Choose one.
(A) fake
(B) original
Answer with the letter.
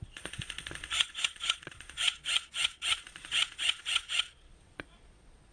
A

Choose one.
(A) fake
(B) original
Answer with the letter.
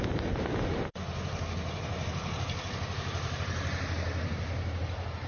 B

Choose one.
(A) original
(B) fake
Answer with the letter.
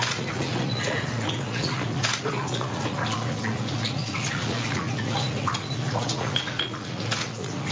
B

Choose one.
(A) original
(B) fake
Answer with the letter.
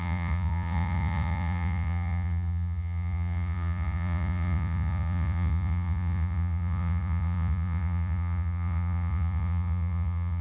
B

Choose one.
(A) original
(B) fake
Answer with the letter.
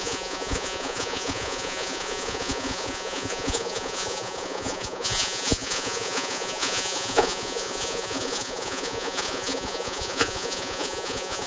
B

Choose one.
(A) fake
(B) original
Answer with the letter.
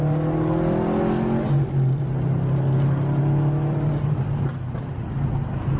B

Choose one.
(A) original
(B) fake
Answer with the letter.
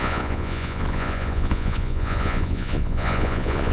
B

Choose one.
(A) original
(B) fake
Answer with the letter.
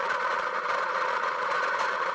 B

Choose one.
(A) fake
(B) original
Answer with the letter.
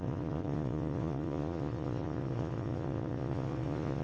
A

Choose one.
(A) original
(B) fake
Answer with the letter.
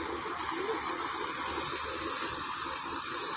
A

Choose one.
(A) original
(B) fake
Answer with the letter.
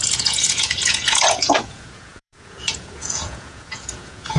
B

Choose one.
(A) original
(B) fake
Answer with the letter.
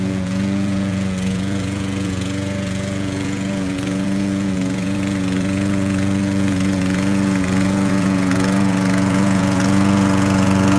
B